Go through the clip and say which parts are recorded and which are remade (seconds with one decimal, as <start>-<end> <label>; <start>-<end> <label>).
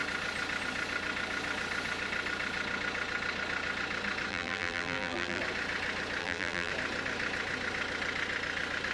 0.0-4.3 recorded; 4.3-5.4 remade; 5.4-6.2 recorded; 6.2-6.7 remade; 6.7-8.9 recorded